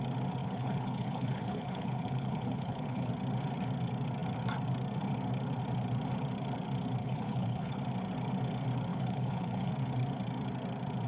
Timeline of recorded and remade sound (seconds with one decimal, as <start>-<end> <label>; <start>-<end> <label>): 0.0-0.4 recorded; 0.4-3.1 remade; 3.1-7.0 recorded; 7.0-7.8 remade; 7.8-8.9 recorded; 8.9-9.7 remade; 9.7-11.1 recorded